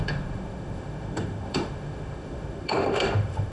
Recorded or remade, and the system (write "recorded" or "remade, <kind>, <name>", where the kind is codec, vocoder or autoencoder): remade, autoencoder, DAC-VAE